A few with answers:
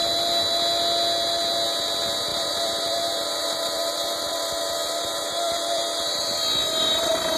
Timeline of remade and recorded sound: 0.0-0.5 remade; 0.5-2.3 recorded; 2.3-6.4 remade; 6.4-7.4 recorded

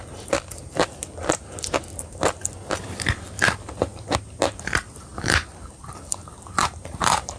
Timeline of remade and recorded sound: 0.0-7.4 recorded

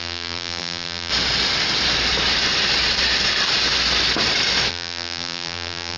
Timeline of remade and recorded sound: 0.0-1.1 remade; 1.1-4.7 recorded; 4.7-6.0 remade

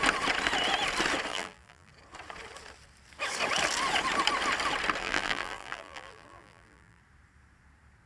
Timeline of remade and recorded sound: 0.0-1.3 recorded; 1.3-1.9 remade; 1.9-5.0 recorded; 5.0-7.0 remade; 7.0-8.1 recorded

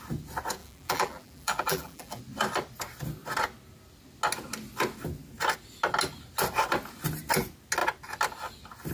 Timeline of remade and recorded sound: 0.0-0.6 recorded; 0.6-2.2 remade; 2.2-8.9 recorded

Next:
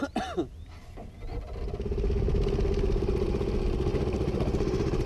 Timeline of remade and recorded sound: 0.0-3.9 recorded; 3.9-5.1 remade